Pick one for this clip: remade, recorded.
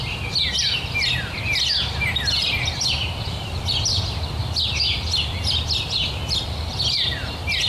recorded